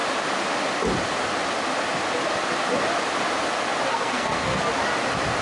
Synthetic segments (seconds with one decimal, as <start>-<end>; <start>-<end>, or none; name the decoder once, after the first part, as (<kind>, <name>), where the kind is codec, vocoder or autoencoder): 3.9-4.7 (codec, SNAC)